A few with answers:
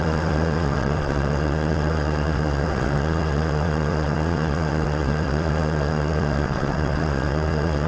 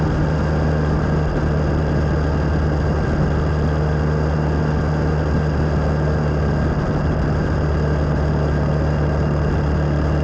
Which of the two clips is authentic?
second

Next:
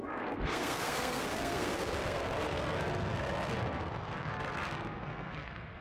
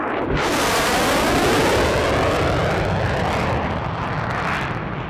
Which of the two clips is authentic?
second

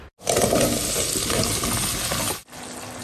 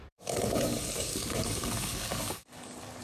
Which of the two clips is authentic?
first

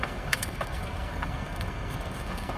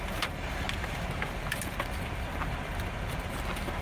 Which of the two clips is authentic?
second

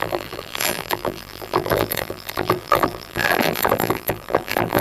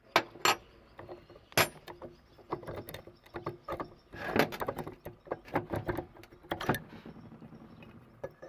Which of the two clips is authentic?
second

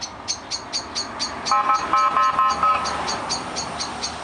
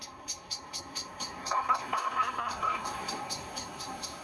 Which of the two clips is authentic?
first